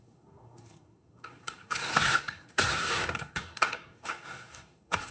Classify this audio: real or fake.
fake